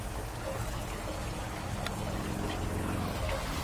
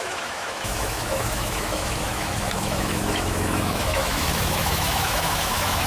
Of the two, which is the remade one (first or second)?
second